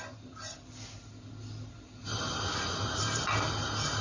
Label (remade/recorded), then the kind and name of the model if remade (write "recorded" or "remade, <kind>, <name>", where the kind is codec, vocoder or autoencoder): recorded